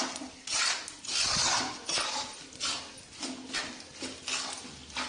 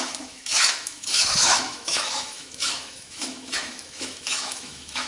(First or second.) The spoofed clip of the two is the second